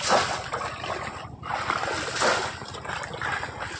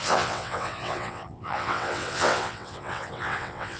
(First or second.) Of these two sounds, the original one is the first